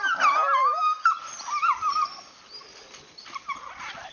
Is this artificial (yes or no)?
no